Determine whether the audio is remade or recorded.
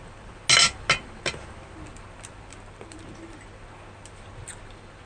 recorded